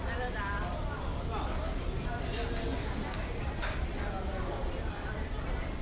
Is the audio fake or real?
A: real